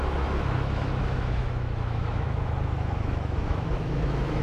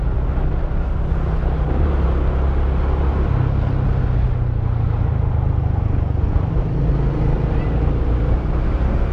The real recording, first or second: second